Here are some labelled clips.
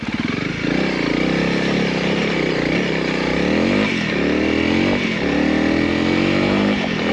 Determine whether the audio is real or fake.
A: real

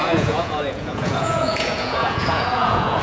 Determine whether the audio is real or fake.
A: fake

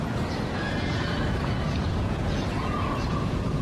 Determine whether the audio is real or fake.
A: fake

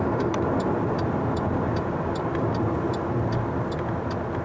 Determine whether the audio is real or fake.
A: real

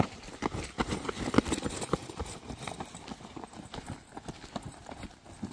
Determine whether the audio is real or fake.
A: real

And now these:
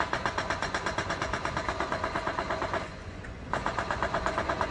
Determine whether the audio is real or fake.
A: fake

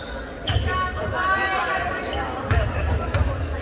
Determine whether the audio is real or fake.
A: real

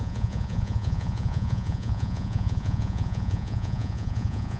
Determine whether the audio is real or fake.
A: fake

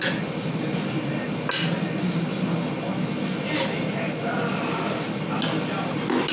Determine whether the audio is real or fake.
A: real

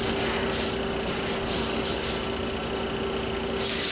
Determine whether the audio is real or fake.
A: real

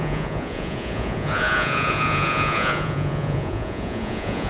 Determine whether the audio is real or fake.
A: fake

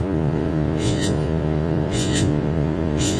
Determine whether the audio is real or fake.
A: fake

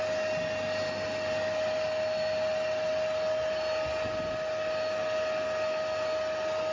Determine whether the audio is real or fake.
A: real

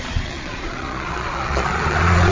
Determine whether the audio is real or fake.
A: fake